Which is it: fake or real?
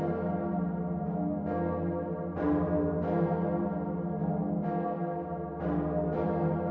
real